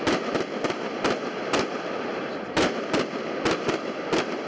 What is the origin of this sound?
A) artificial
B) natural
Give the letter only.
B